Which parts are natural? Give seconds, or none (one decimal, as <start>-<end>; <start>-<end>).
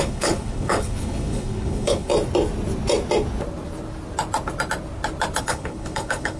2.1-5.4